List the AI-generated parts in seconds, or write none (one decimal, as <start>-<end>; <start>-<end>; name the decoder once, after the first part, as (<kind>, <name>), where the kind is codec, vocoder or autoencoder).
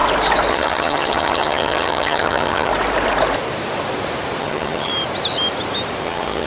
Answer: 0.5-2.7 (vocoder, HiFi-GAN); 4.4-4.9; 6.0-6.5